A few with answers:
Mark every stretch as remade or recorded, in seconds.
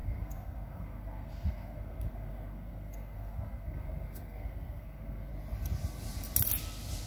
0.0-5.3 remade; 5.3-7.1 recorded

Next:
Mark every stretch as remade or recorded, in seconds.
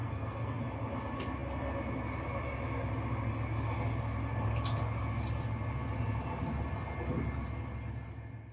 0.0-0.6 remade; 0.6-8.5 recorded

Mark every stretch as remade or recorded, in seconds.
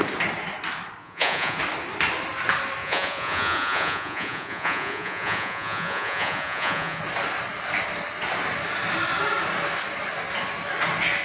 0.0-1.0 recorded; 1.0-1.6 remade; 1.6-2.8 recorded; 2.8-7.0 remade; 7.0-11.2 recorded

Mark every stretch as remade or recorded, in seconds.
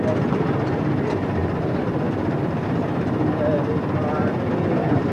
0.0-5.1 recorded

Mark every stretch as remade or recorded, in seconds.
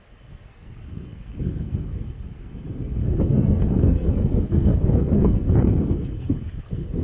0.0-7.0 remade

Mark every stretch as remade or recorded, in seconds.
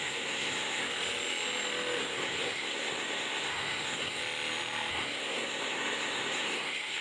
0.0-0.9 remade; 0.9-2.0 recorded; 2.0-4.2 remade; 4.2-4.9 recorded; 4.9-7.0 remade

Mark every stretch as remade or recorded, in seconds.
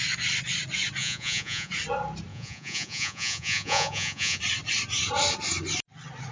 0.0-1.0 recorded; 1.0-1.7 remade; 1.7-2.3 recorded; 2.3-4.4 remade; 4.4-6.3 recorded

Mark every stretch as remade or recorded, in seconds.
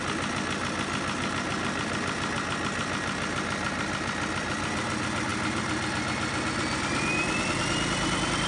0.0-8.5 recorded